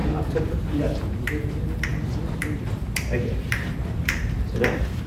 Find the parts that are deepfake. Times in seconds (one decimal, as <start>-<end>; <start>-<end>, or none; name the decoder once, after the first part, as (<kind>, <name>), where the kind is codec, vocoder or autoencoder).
0.0-1.9 (vocoder, BigVGAN v2); 2.4-5.1